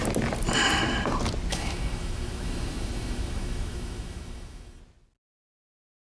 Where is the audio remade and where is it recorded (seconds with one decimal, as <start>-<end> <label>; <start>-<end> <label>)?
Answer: 0.0-1.5 recorded; 1.5-4.8 remade; 4.8-6.1 recorded